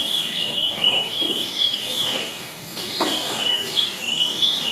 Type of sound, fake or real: fake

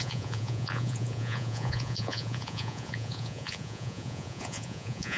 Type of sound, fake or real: fake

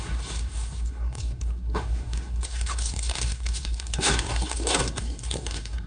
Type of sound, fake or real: fake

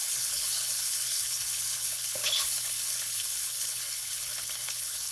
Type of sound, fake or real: fake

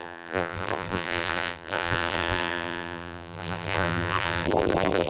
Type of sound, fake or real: fake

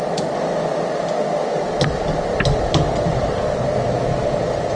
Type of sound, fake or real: real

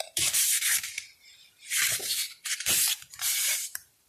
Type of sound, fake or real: fake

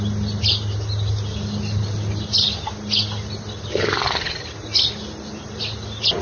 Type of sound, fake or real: real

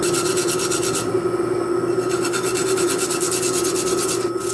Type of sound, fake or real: real